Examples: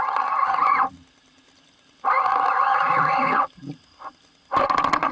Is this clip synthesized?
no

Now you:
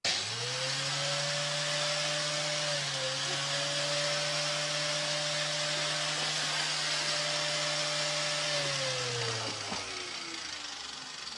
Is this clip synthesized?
no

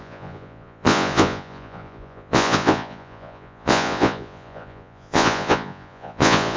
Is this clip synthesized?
yes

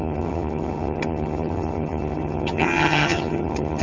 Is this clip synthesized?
yes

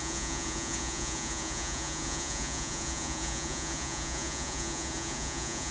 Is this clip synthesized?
yes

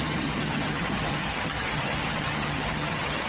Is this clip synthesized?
yes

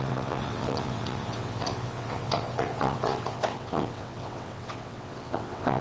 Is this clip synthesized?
yes